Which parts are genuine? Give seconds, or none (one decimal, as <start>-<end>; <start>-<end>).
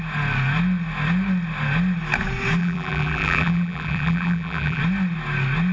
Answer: 0.0-2.6; 4.8-5.7